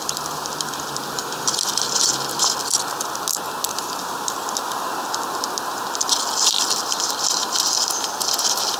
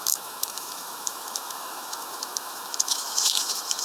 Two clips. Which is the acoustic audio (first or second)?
first